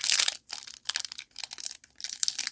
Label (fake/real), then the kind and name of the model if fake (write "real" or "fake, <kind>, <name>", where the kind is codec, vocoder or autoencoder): real